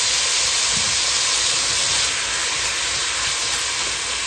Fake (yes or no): no